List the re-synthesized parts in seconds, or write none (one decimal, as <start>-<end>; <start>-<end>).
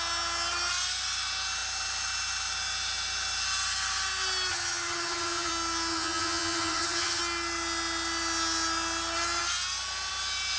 4.5-5.5; 5.9-7.2